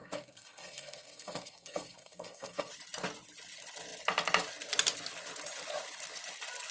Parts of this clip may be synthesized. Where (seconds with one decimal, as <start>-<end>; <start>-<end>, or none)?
0.0-2.7